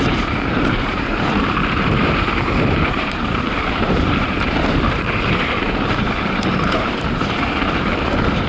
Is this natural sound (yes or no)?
no